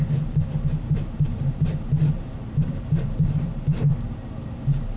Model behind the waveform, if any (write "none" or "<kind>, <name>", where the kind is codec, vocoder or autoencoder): vocoder, BigVGAN v2